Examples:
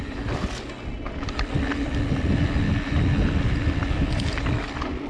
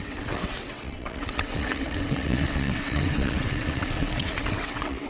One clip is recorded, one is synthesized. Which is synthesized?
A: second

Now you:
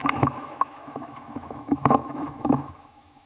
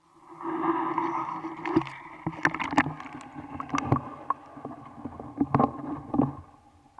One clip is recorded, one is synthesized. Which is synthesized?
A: first